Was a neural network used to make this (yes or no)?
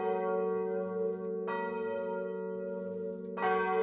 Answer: no